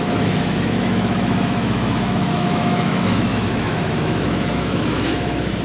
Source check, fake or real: fake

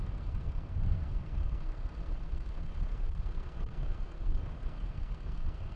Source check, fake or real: fake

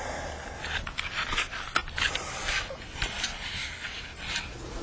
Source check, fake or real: real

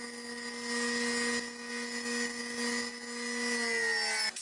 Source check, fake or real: real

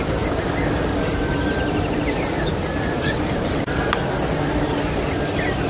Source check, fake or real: real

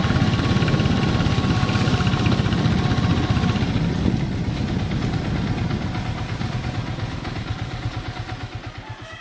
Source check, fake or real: real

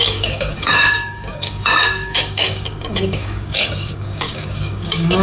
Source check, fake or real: fake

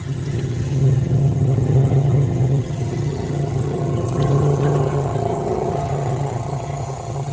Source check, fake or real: fake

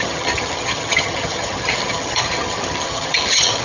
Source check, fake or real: fake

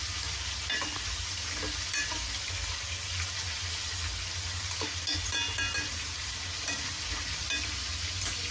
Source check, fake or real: real